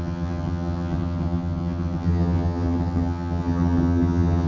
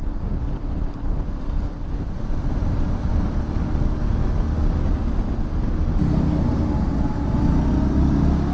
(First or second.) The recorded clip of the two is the second